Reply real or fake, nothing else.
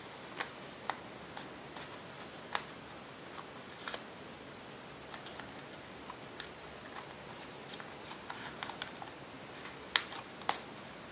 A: real